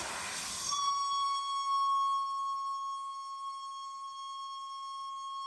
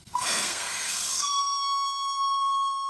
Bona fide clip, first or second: first